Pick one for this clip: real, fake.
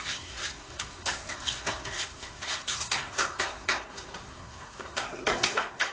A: fake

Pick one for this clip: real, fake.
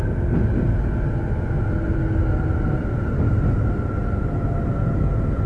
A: real